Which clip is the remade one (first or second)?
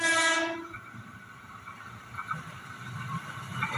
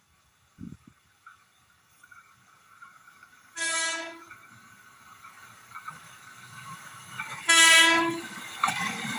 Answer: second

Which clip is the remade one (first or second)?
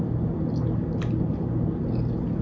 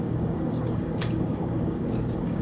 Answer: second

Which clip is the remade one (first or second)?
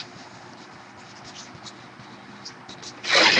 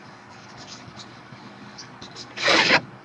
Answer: second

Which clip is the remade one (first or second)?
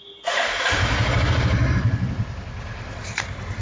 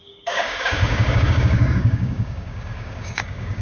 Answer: second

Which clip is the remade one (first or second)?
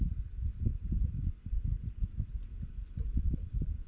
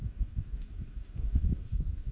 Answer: second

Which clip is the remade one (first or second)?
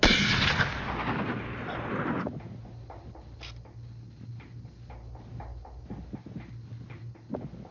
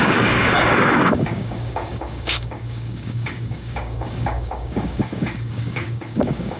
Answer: second